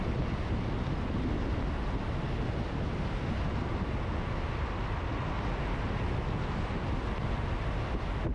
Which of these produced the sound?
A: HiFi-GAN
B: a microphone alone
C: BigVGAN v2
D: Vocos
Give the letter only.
B